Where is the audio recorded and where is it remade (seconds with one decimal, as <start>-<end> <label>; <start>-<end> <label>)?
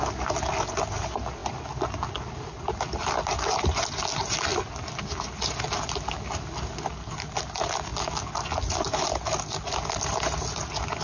0.0-11.0 recorded